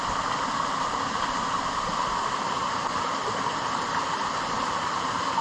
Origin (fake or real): real